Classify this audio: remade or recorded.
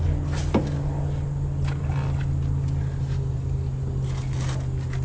recorded